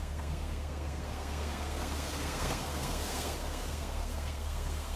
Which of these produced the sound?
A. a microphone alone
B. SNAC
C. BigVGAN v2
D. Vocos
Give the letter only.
B